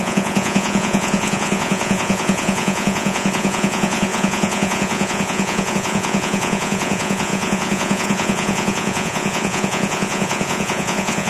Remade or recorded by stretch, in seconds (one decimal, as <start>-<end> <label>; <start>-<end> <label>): 0.0-11.3 remade